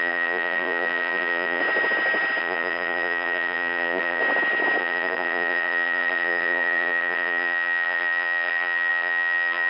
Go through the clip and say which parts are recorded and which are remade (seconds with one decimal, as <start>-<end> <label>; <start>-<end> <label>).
0.0-1.6 remade; 1.6-2.4 recorded; 2.4-4.2 remade; 4.2-4.8 recorded; 4.8-9.7 remade